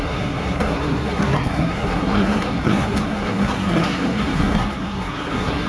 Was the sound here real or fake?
fake